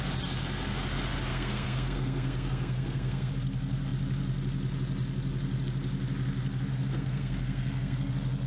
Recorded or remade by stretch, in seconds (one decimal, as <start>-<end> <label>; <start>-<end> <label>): 0.0-1.3 recorded; 1.3-3.3 remade; 3.3-6.7 recorded; 6.7-8.1 remade; 8.1-8.5 recorded

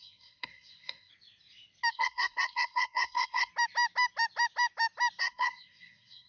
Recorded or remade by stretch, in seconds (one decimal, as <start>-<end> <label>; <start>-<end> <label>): 0.0-1.1 remade; 1.1-1.9 recorded; 1.9-3.5 remade; 3.5-5.2 recorded; 5.2-6.3 remade

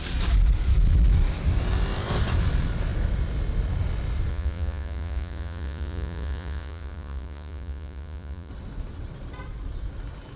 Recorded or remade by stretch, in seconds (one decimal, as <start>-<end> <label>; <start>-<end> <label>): 0.0-4.3 recorded; 4.3-8.5 remade; 8.5-10.4 recorded

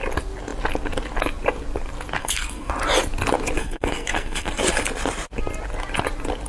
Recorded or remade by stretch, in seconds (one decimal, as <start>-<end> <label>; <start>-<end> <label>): 0.0-2.2 recorded; 2.2-2.7 remade; 2.7-3.6 recorded; 3.6-4.5 remade; 4.5-6.5 recorded

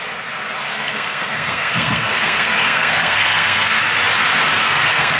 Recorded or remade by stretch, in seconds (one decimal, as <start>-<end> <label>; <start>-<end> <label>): 0.0-0.7 recorded; 0.7-3.8 remade; 3.8-4.6 recorded; 4.6-5.2 remade

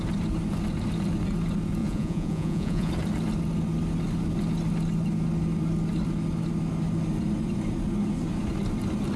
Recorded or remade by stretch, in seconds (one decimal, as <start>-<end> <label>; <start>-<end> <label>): 0.0-1.8 recorded; 1.8-2.9 remade; 2.9-9.2 recorded

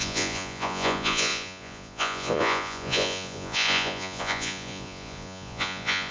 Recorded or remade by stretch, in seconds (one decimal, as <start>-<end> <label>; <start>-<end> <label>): 0.0-6.1 remade

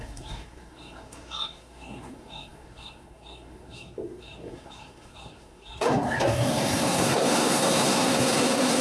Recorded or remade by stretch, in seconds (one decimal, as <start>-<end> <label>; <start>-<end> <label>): 0.0-8.8 remade